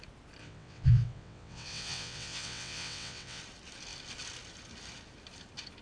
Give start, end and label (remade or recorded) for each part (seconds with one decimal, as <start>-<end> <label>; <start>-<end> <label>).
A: 0.0-0.4 recorded; 0.4-3.4 remade; 3.4-5.8 recorded